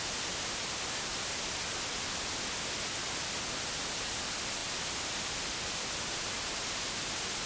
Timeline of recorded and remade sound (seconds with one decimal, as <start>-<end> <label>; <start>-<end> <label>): 0.0-7.5 recorded